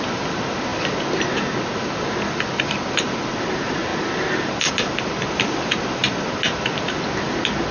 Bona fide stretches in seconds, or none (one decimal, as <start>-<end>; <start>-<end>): 0.7-2.6